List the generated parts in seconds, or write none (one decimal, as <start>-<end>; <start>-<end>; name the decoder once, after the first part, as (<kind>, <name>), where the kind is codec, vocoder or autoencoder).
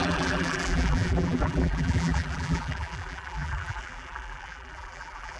0.0-5.4 (vocoder, BigVGAN v2)